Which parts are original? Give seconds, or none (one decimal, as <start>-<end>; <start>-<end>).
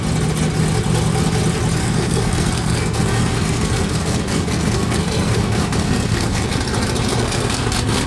0.0-1.8; 6.5-7.1